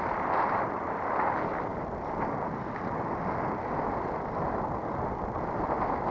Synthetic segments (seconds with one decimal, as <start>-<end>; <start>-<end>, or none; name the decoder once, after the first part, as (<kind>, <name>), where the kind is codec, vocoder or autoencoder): none